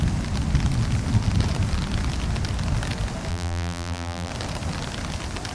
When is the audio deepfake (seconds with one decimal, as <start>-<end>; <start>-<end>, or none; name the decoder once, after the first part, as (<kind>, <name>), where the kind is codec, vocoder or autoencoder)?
3.3-4.3 (vocoder, BigVGAN v2)